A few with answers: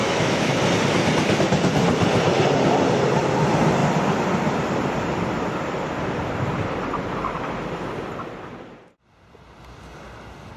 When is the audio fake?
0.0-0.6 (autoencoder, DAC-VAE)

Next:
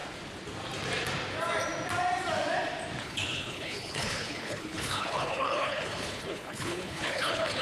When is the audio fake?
3.0-7.6 (codec, HILCodec)